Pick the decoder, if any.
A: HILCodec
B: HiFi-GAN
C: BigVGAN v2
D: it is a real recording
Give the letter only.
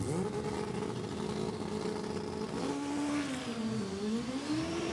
D